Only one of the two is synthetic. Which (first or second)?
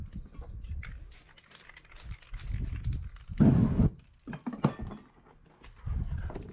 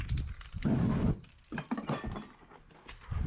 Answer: second